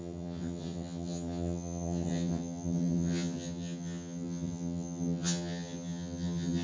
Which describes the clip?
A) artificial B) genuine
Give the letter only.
A